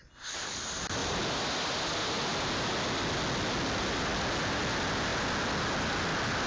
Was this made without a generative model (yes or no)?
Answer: yes